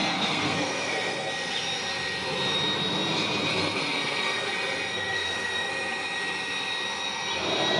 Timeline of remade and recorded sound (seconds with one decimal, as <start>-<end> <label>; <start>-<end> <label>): 0.0-1.3 remade; 1.3-3.5 recorded; 3.5-4.5 remade; 4.5-4.9 recorded; 4.9-5.7 remade; 5.7-7.8 recorded